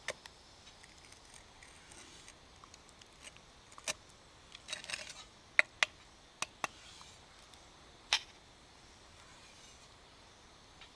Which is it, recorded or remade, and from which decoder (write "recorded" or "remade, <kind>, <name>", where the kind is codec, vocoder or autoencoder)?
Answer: recorded